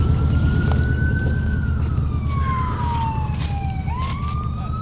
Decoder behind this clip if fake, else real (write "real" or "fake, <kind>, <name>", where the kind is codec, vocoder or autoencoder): real